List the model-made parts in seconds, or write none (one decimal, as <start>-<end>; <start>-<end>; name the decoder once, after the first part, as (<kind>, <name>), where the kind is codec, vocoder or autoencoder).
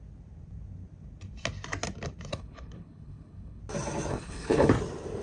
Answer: 2.3-3.6 (codec, HILCodec); 4.1-4.7